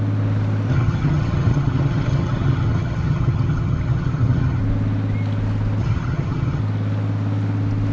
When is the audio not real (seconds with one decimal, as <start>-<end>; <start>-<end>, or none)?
0.7-4.6; 5.8-6.6